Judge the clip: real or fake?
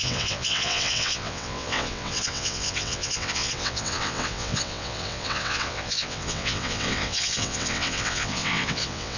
fake